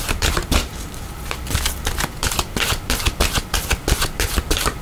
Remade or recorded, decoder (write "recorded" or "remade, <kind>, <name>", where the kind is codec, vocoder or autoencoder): remade, vocoder, BigVGAN v2